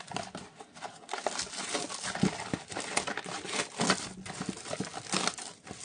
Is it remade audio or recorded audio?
recorded